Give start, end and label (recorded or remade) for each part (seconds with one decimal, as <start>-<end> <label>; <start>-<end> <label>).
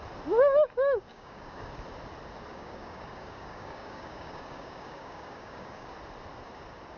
0.0-1.1 recorded; 1.1-1.7 remade; 1.7-2.5 recorded; 2.5-5.9 remade; 5.9-7.0 recorded